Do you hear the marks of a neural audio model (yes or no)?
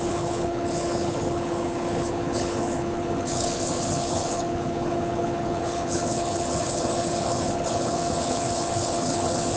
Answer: yes